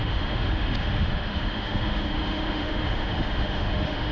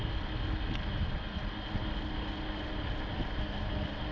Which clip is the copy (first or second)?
first